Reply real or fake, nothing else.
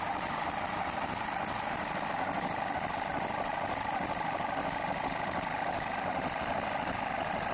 real